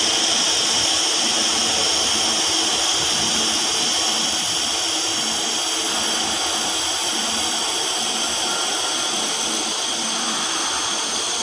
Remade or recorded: recorded